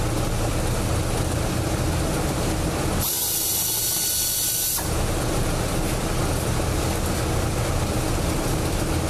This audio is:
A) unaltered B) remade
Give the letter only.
A